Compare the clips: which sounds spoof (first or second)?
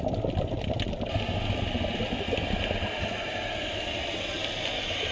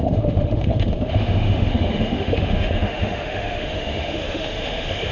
second